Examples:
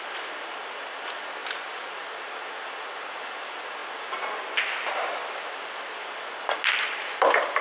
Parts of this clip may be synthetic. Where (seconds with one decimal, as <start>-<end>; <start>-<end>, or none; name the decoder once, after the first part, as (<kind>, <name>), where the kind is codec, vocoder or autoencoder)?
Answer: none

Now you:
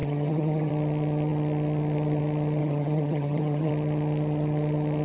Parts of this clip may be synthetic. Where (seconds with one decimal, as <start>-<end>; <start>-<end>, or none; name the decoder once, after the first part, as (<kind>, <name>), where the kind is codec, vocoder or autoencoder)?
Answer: 0.0-0.7 (vocoder, HiFi-GAN); 2.6-3.7

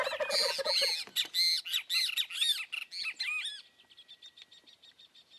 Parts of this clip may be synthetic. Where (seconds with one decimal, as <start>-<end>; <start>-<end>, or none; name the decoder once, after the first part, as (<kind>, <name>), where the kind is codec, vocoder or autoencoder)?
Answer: none